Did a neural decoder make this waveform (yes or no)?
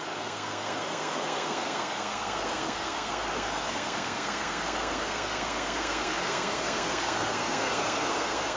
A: yes